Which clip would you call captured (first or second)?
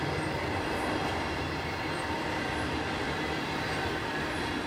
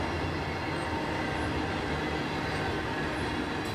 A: second